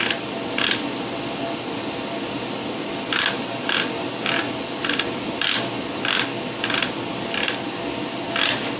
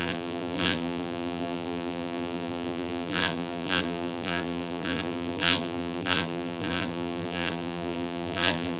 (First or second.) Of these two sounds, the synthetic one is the second